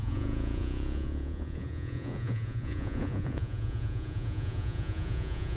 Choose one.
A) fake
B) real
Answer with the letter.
A